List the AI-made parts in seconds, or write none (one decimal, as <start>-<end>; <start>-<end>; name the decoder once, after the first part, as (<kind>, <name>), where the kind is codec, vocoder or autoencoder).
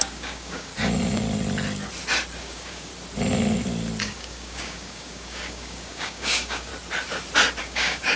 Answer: 0.0-0.7 (codec, DAC); 2.4-2.9; 4.0-6.7; 7.6-8.2